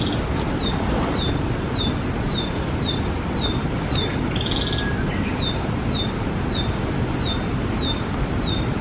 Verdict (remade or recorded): recorded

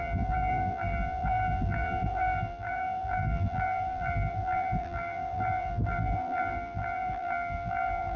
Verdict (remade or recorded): remade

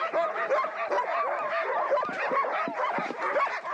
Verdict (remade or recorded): recorded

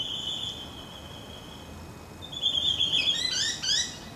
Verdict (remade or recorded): recorded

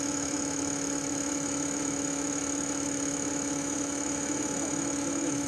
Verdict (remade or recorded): remade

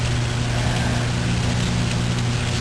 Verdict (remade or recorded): recorded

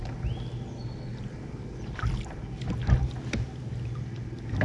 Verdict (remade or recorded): recorded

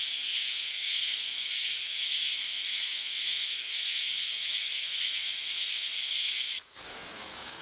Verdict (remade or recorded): remade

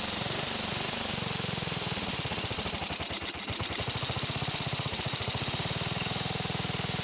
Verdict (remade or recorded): remade